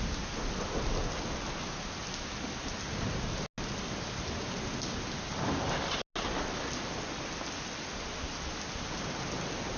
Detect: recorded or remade recorded